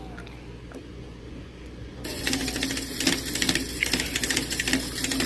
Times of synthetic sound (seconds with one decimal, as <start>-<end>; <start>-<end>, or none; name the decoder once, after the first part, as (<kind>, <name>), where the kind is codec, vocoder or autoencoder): 0.8-2.4 (vocoder, Vocos)